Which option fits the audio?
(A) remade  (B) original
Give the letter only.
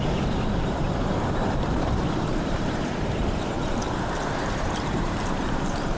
A